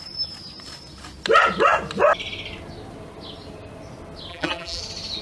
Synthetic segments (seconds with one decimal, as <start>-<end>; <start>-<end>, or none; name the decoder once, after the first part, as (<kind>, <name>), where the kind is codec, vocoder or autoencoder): 4.3-4.8 (vocoder, BigVGAN v2)